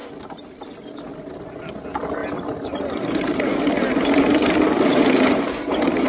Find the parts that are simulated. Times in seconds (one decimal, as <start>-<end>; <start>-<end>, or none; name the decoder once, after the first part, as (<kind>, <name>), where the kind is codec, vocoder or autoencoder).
0.0-0.7 (vocoder, BigVGAN v2); 2.2-6.1